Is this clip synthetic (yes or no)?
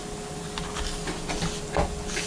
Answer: no